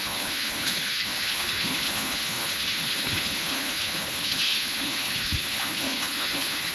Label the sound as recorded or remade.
remade